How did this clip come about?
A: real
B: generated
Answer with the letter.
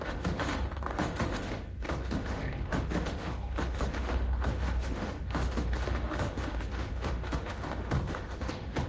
B